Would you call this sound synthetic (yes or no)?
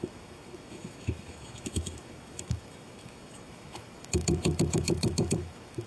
yes